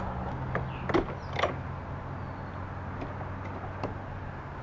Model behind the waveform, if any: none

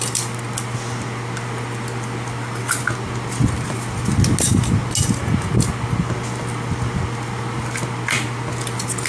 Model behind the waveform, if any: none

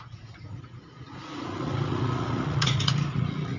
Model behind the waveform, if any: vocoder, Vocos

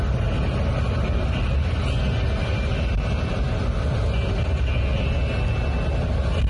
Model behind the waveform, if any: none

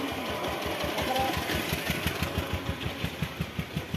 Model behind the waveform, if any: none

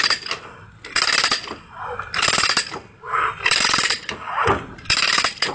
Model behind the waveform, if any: none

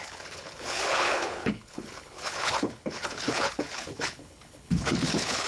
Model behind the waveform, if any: codec, HILCodec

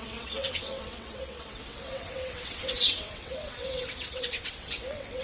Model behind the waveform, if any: vocoder, WaveNeXt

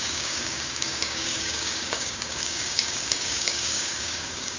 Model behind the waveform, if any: codec, DAC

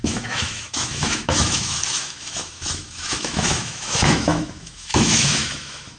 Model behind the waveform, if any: autoencoder, DAC-VAE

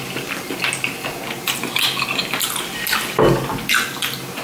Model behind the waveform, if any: none